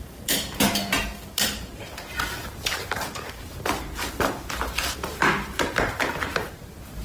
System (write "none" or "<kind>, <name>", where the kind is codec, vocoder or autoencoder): vocoder, BigVGAN v2